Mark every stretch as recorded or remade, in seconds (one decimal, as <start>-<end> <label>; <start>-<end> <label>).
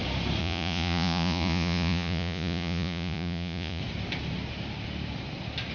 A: 0.0-0.4 recorded; 0.4-3.8 remade; 3.8-5.7 recorded